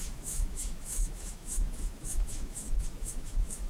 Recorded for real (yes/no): no